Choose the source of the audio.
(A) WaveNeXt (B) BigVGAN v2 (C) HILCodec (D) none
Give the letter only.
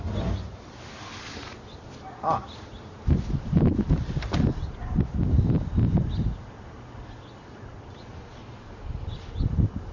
D